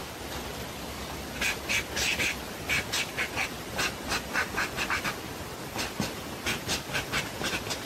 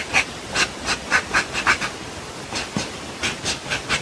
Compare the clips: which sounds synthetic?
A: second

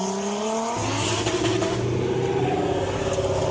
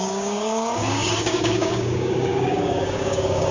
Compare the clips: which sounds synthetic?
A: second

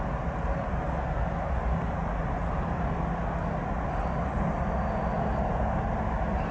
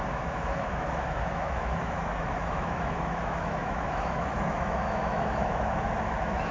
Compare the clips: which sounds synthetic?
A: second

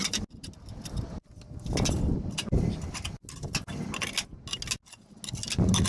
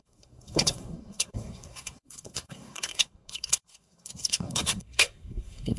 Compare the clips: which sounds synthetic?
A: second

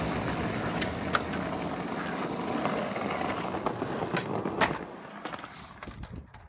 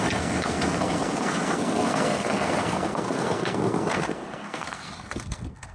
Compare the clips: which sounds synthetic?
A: second